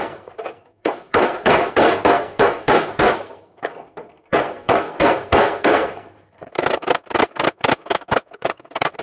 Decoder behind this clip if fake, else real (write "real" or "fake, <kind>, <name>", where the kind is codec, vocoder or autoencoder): fake, codec, SNAC